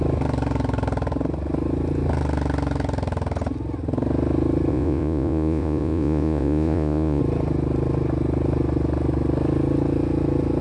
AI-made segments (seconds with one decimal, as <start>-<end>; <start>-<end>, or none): 4.7-7.2